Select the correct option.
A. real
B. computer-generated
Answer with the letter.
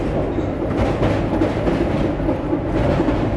A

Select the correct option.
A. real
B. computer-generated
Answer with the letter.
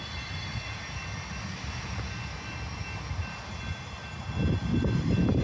A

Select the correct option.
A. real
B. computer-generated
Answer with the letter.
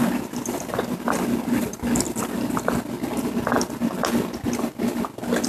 A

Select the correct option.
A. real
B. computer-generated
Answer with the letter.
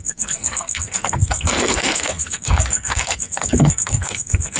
B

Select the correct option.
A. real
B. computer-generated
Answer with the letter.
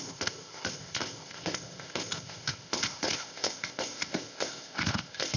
B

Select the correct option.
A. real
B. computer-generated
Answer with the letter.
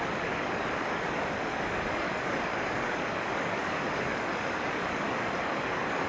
B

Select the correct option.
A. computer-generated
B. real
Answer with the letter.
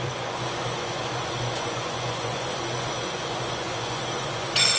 A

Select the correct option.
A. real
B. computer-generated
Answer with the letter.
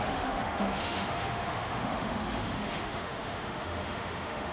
B